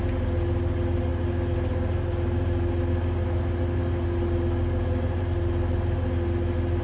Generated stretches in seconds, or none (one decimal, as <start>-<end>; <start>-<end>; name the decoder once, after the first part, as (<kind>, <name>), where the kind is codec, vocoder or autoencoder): none